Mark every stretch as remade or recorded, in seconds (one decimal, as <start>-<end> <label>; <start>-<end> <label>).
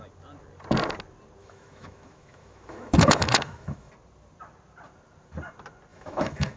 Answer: 0.0-1.4 recorded; 1.4-3.9 remade; 3.9-5.9 recorded; 5.9-6.6 remade